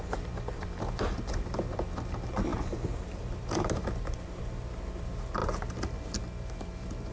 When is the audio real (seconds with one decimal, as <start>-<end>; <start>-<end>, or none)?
0.0-7.1